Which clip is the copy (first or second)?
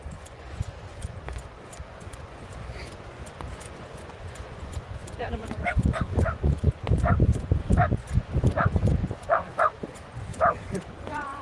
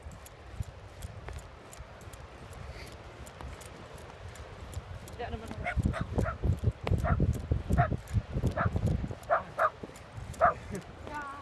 first